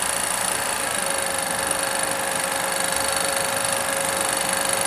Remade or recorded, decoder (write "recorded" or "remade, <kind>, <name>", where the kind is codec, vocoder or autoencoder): recorded